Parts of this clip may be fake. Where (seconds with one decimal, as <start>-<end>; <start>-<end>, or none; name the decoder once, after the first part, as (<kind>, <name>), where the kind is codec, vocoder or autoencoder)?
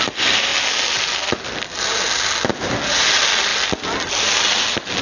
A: 3.5-4.1 (vocoder, BigVGAN v2)